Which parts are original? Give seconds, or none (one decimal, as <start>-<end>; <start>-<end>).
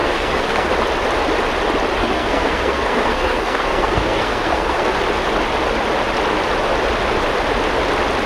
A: 0.7-2.0; 4.9-8.3